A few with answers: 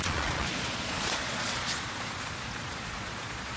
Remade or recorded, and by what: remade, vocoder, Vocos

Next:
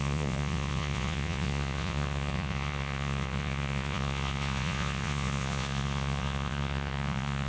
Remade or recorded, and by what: remade, vocoder, Vocos